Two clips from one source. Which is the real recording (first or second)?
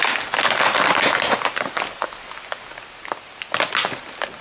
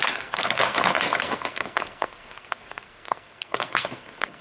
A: first